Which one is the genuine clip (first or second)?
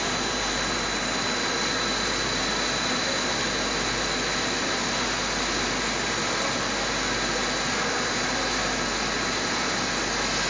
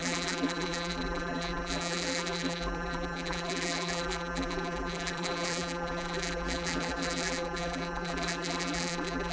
first